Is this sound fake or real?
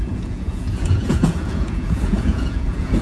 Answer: fake